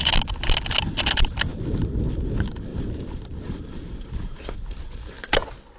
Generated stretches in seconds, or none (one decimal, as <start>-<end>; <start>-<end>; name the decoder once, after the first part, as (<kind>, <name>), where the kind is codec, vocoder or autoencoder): 2.7-4.5 (vocoder, BigVGAN v2)